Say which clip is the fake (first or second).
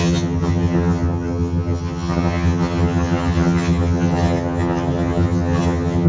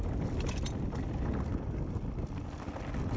first